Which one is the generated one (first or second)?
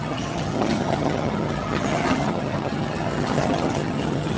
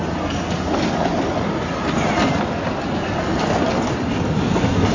first